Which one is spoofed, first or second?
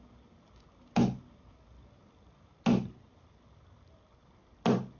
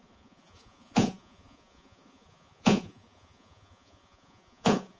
second